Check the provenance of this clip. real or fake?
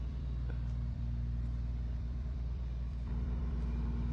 fake